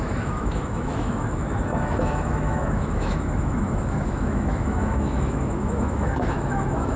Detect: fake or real fake